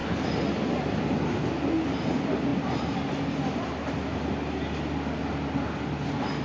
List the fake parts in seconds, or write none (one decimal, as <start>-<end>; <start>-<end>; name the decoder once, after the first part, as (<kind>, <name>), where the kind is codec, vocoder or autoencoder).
none